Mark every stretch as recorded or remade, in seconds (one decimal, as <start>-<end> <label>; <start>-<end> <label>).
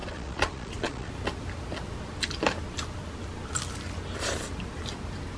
0.0-1.1 remade; 1.1-5.4 recorded